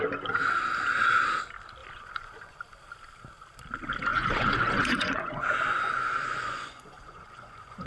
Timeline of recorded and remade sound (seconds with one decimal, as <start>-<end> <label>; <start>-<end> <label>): 0.0-1.8 recorded; 1.8-2.6 remade; 2.6-4.1 recorded; 4.1-7.9 remade